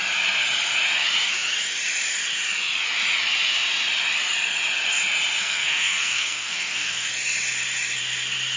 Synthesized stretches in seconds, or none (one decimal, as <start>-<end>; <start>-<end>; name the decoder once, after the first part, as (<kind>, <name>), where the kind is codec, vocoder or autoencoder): 5.4-7.1 (codec, SNAC)